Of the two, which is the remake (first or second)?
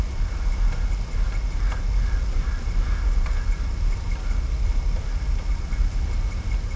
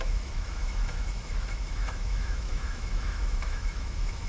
second